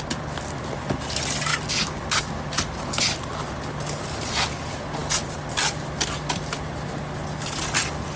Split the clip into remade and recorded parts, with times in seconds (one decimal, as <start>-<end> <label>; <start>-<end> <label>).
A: 0.0-8.2 recorded